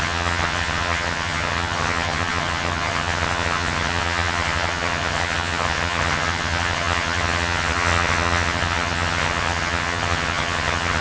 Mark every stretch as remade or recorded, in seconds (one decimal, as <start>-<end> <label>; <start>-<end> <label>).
0.0-11.0 remade